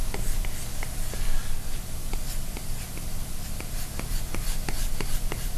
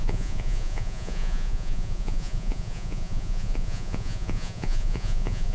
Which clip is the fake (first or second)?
second